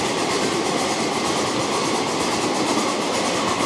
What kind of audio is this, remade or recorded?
recorded